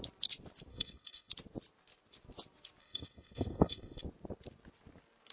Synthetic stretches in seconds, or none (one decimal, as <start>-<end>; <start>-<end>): 0.7-1.3; 2.8-4.0